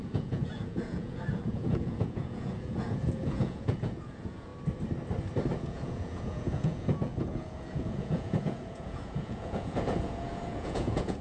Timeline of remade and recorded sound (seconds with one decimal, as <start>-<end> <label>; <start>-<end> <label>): 0.0-4.5 remade; 4.5-5.6 recorded; 5.6-11.2 remade